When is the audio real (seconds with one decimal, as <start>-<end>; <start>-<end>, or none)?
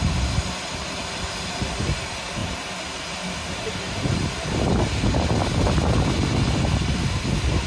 0.0-7.7